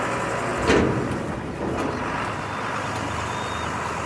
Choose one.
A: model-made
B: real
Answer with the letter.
B